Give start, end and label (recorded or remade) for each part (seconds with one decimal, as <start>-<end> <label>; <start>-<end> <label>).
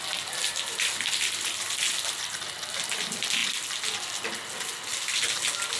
0.0-5.8 recorded